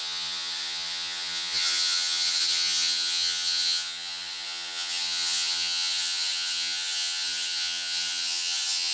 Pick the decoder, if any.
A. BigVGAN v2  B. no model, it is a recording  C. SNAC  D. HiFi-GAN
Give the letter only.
D